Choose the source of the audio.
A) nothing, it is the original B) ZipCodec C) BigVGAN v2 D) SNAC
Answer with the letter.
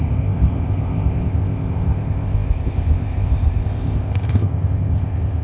B